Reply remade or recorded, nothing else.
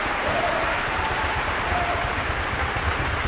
remade